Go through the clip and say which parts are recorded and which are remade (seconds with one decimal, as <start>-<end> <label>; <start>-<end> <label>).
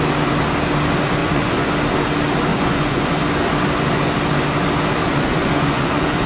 0.0-1.2 recorded; 1.2-1.7 remade; 1.7-2.5 recorded; 2.5-3.1 remade; 3.1-5.0 recorded; 5.0-6.3 remade